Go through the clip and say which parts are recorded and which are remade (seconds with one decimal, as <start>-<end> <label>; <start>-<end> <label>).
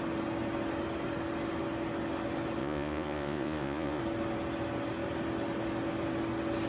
0.0-2.6 recorded; 2.6-4.0 remade; 4.0-6.7 recorded